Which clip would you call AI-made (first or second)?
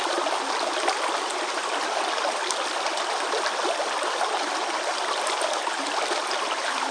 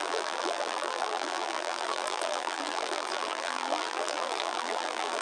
second